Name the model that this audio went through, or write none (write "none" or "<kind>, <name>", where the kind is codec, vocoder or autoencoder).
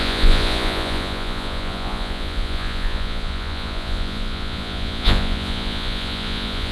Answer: vocoder, Vocos